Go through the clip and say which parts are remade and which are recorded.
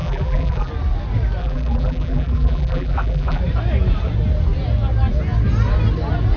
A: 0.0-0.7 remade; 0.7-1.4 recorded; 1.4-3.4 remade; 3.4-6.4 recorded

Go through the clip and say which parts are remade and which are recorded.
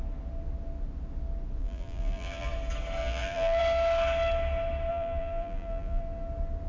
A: 0.0-1.6 recorded; 1.6-2.5 remade; 2.5-3.0 recorded; 3.0-3.6 remade; 3.6-4.9 recorded; 4.9-6.0 remade; 6.0-6.7 recorded